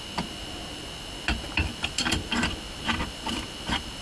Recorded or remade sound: remade